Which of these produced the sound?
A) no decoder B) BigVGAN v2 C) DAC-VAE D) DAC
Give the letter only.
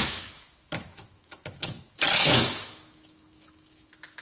C